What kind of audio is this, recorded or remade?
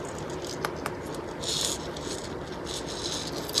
recorded